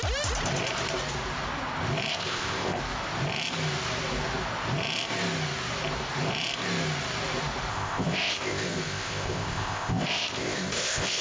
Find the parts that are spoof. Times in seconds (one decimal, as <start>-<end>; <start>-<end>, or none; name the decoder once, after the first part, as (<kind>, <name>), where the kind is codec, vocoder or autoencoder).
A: 2.1-2.8 (codec, ZipCodec); 7.7-11.2